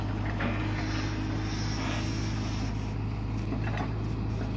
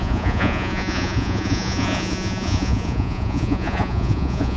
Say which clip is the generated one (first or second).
second